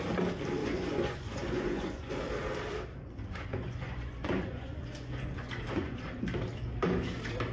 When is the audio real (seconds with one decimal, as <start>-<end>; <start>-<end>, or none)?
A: 0.0-0.6; 2.1-2.9; 6.1-7.5